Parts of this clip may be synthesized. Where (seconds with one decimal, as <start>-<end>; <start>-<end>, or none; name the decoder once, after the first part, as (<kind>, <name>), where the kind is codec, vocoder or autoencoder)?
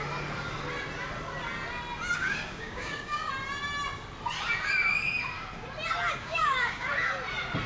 2.2-3.3 (codec, DAC); 6.2-6.9